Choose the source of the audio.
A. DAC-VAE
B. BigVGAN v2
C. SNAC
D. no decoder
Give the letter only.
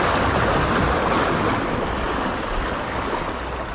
D